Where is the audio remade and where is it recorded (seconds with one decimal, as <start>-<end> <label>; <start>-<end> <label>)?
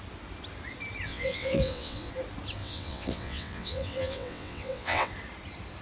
0.0-1.1 recorded; 1.1-2.1 remade; 2.1-2.6 recorded; 2.6-5.1 remade; 5.1-5.8 recorded